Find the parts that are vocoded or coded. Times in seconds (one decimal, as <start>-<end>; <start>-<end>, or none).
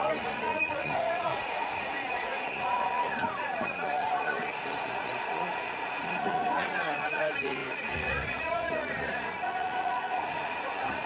0.0-11.1